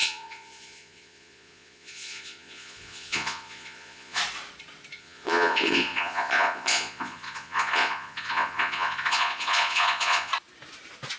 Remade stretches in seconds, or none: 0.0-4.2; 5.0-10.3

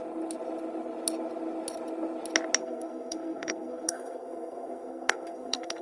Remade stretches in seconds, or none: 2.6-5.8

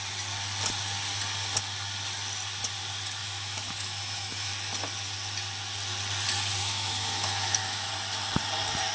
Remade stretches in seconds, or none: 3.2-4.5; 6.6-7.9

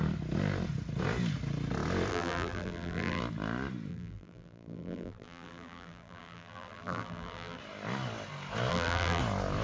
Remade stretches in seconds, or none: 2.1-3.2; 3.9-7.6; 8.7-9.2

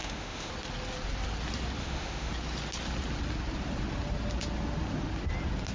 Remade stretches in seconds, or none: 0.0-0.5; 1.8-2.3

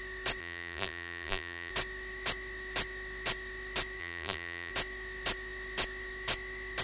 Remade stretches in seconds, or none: 0.4-1.7; 4.0-4.7